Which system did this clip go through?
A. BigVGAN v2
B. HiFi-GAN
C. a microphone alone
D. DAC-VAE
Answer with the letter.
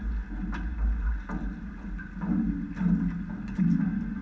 C